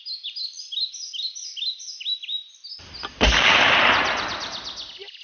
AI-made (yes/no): no